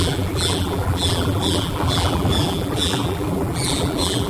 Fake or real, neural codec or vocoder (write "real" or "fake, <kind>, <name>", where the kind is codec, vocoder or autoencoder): fake, vocoder, BigVGAN v2